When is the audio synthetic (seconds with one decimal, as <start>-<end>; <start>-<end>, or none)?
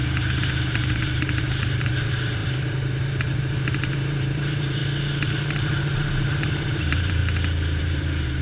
0.0-4.8; 5.3-7.2; 7.8-8.4